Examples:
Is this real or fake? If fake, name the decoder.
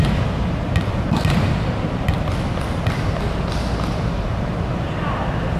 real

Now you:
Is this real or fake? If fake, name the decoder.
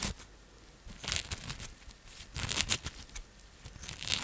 real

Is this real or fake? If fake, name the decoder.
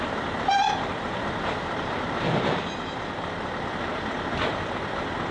real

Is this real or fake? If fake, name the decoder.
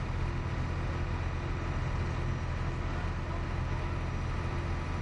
real